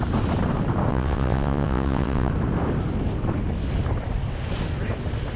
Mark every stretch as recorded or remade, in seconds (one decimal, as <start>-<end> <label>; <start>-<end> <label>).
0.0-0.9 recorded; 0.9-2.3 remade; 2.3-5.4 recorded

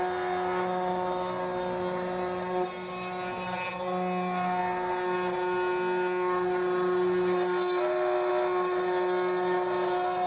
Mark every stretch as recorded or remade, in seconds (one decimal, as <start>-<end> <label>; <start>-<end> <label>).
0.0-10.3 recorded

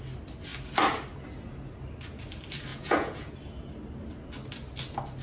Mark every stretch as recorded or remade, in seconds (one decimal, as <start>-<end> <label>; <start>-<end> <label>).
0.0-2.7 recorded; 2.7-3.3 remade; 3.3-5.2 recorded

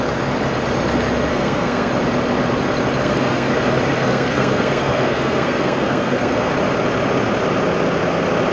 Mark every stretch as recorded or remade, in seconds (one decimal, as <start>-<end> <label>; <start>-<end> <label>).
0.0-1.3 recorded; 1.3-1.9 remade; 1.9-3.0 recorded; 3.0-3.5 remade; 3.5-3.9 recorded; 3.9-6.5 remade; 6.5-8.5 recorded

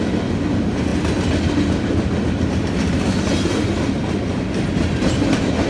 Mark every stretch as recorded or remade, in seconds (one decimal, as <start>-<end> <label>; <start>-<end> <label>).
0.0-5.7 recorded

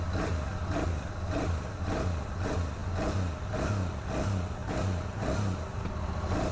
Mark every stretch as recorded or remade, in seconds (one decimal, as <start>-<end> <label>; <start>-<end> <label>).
0.0-6.5 recorded

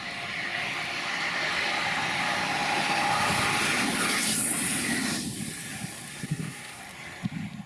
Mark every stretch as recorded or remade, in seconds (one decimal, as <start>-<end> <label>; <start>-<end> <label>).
0.0-6.1 recorded; 6.1-6.8 remade; 6.8-7.7 recorded

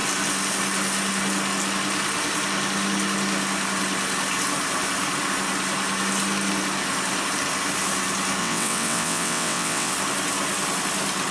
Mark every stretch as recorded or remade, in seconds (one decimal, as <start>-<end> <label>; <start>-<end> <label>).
0.0-8.4 recorded; 8.4-9.9 remade; 9.9-11.3 recorded